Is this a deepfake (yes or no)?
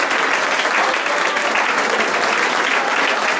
no